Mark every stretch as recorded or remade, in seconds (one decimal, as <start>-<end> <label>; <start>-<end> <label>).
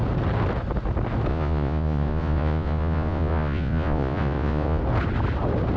0.0-1.3 recorded; 1.3-4.8 remade; 4.8-5.8 recorded